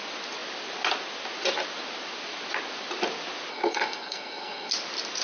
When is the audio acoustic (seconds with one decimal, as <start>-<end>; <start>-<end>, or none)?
0.0-3.5; 4.7-5.2